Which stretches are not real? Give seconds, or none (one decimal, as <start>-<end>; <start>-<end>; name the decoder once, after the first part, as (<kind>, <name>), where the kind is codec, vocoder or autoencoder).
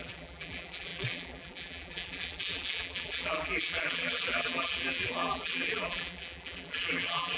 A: 0.0-7.4 (vocoder, BigVGAN v2)